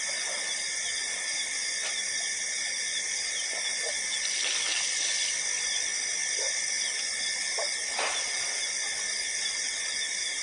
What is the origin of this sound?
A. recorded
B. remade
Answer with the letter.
A